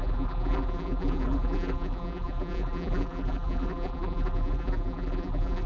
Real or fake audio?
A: fake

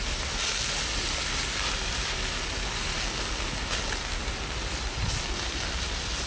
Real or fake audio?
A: real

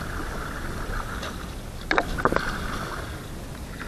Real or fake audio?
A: real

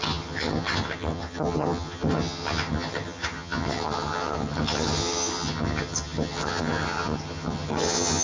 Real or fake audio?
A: fake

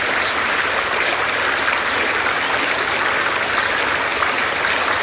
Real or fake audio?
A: real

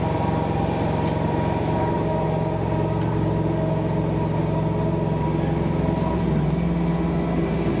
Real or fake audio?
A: real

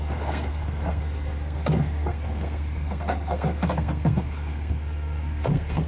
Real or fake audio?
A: fake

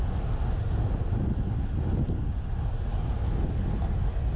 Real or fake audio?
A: real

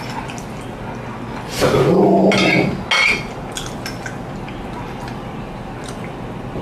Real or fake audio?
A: real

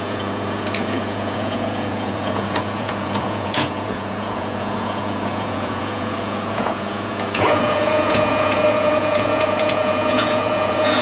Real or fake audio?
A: fake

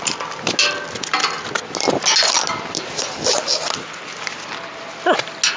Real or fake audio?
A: real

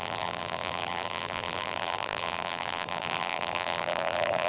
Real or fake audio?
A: fake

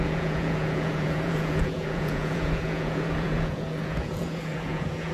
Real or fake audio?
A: fake